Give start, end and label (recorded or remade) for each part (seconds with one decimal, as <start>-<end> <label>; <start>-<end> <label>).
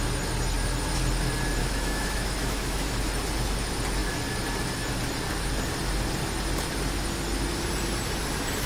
0.0-1.6 recorded; 1.6-2.9 remade; 2.9-8.7 recorded